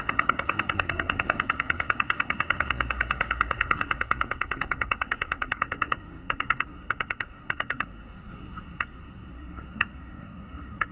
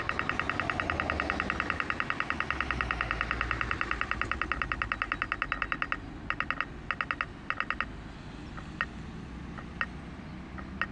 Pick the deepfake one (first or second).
first